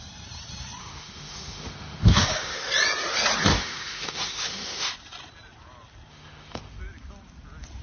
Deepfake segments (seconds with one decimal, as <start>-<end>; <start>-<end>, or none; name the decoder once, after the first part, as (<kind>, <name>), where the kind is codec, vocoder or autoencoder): 0.8-2.7 (autoencoder, DAC-VAE); 3.5-4.9; 6.1-6.8